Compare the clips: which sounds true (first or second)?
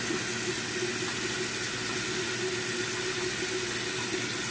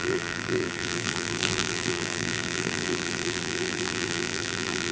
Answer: first